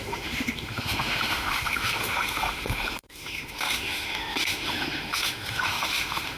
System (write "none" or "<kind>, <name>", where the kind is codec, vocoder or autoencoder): autoencoder, DAC-VAE